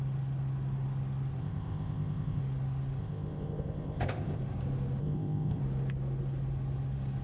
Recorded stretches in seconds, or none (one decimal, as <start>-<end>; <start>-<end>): 0.0-1.4; 2.4-3.0; 4.4-5.0; 5.6-7.2

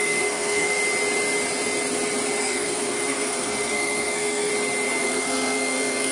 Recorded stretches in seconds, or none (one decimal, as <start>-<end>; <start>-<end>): 0.8-2.4; 4.5-5.0

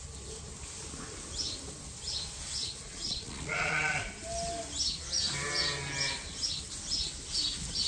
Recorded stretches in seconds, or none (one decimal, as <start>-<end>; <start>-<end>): 0.0-2.9; 4.0-7.9

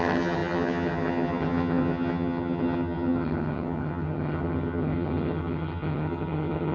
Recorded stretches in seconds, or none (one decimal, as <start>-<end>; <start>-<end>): none